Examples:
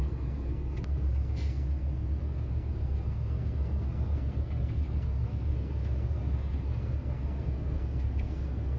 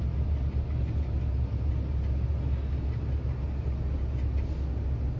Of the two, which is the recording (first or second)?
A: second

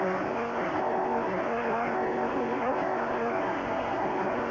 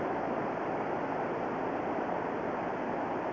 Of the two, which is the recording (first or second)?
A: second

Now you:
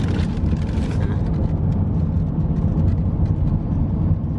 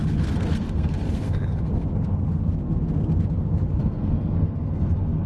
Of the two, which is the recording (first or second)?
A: first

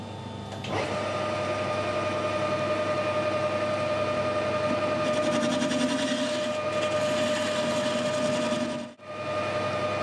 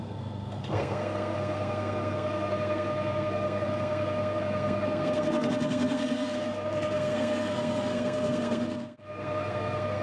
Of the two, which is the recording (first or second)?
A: first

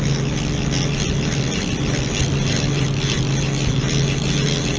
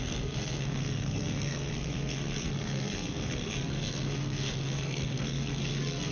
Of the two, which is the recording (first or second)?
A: first